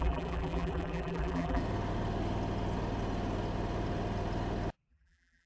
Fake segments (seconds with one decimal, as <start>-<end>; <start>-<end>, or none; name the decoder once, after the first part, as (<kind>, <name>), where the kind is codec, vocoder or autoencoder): 0.0-1.6 (vocoder, BigVGAN v2); 4.9-5.5